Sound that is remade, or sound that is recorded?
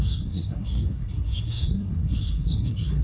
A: remade